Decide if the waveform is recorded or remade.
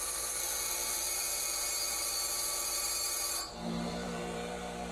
remade